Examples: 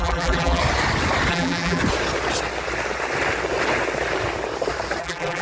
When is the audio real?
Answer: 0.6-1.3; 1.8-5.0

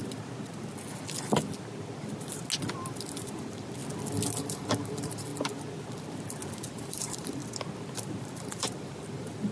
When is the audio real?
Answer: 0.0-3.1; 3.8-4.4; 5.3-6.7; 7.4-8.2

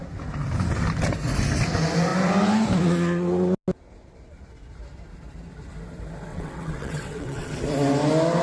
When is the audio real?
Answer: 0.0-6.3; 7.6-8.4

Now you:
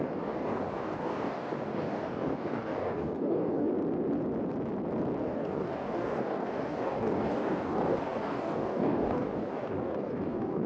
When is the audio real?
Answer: 3.7-5.2

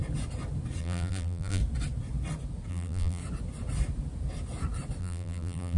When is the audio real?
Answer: 0.0-0.8; 1.6-2.7; 3.2-5.0

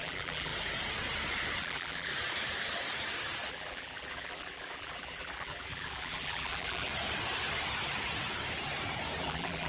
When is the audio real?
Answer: 0.5-1.6; 2.1-3.5; 6.9-9.2